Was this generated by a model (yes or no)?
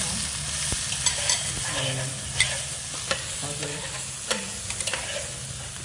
no